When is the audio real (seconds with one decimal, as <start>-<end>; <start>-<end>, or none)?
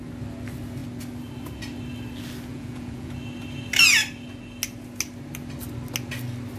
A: 0.0-2.5; 3.1-6.6